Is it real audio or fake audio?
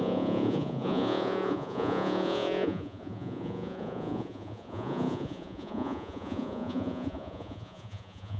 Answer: fake